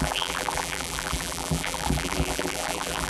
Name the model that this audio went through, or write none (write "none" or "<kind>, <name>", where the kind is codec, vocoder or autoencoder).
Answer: vocoder, BigVGAN v2